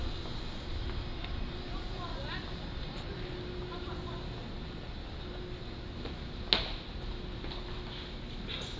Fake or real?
real